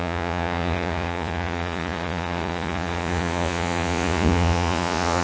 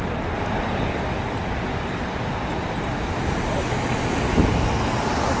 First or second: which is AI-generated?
first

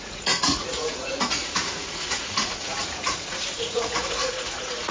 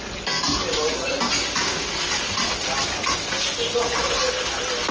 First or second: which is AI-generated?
first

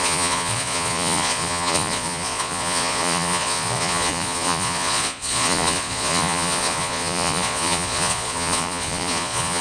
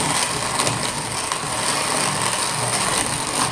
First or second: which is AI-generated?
first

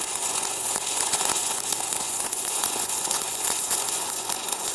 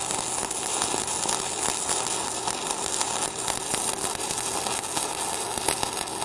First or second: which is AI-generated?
first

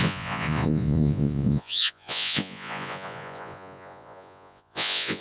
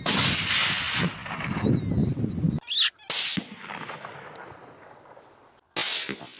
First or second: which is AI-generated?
first